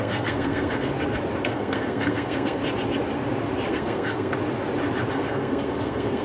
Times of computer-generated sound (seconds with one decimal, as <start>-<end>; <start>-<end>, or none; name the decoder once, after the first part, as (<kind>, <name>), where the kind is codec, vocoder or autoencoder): 0.0-0.9 (codec, SNAC); 1.4-2.6; 3.7-4.3; 5.1-6.2